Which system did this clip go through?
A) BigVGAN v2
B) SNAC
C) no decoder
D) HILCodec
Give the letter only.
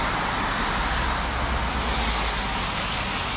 C